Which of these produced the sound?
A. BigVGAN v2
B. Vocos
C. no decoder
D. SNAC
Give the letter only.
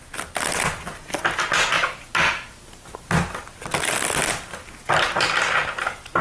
C